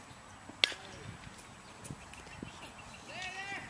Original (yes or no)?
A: yes